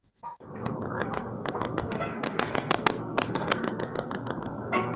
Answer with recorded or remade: remade